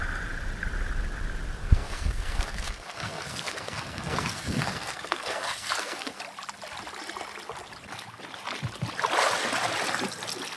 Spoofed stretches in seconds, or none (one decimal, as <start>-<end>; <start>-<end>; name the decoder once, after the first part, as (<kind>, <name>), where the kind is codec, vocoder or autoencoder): 1.6-6.2 (codec, SNAC)